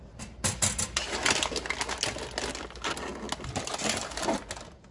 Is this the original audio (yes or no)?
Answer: yes